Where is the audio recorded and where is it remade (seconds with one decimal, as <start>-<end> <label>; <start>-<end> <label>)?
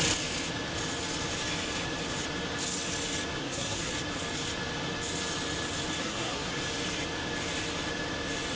0.0-3.4 recorded; 3.4-3.9 remade; 3.9-6.0 recorded; 6.0-6.6 remade; 6.6-8.6 recorded